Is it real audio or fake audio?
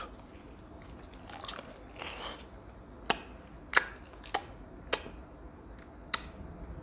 real